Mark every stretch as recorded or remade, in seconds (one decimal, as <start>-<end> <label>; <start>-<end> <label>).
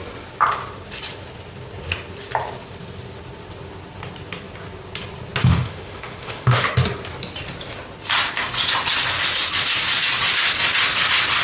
0.0-5.4 recorded; 5.4-6.7 remade; 6.7-11.4 recorded